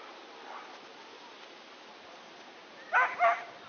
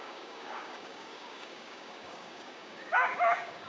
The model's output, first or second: second